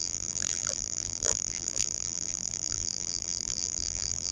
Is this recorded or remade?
remade